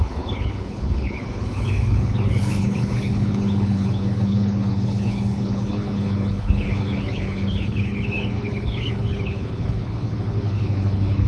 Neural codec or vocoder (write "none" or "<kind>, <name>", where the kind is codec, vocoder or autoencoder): codec, HILCodec